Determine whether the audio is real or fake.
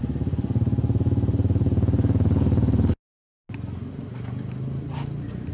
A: real